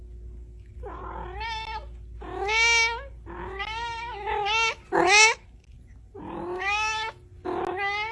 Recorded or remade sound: recorded